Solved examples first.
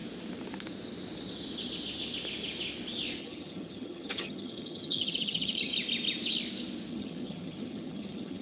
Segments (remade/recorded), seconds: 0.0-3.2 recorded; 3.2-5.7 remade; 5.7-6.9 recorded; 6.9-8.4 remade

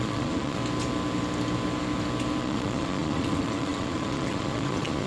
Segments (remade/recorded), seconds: 0.0-0.6 remade; 0.6-2.4 recorded; 2.4-5.1 remade

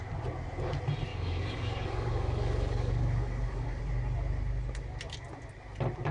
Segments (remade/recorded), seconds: 0.0-1.1 recorded; 1.1-3.8 remade; 3.8-6.1 recorded